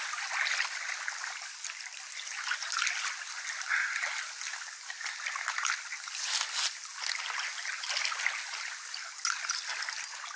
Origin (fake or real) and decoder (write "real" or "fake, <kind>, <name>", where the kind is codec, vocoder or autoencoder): real